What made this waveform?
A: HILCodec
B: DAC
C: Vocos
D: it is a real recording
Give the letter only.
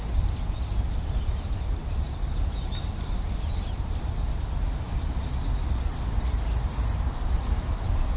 D